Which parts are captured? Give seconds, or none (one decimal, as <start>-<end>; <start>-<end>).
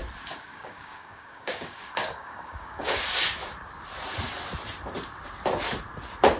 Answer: 0.0-0.5; 3.2-6.4